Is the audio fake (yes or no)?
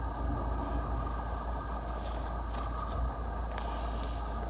no